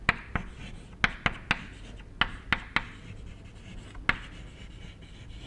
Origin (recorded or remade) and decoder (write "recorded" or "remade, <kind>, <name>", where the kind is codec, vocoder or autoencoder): recorded